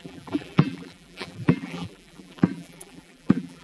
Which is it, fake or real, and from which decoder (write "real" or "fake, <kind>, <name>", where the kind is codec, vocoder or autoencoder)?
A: fake, vocoder, BigVGAN v2